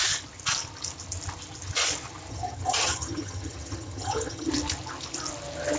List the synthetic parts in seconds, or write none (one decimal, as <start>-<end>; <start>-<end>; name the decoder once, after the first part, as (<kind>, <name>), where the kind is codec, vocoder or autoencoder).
2.3-4.5 (vocoder, HiFi-GAN)